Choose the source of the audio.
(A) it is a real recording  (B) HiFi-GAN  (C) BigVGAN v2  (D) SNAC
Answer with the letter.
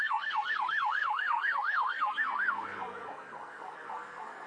D